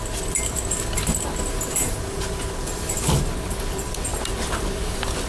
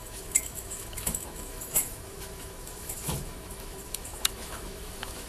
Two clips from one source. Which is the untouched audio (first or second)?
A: first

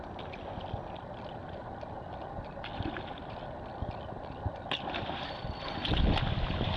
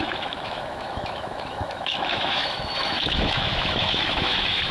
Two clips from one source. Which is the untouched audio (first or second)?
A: first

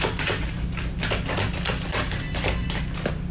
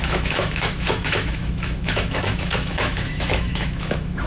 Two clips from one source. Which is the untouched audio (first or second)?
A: first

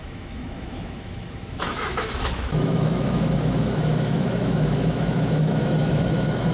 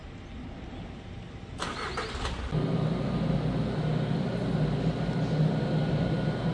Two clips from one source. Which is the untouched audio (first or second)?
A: second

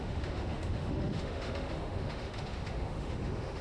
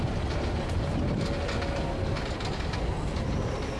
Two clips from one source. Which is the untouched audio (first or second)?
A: second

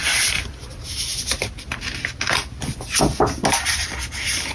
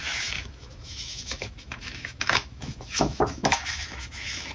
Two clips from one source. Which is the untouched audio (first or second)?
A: first